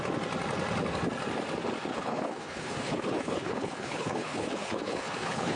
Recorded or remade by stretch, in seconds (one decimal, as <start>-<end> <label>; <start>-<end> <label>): 0.0-1.9 recorded; 1.9-5.6 remade